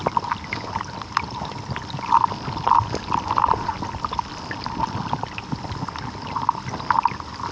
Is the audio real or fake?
real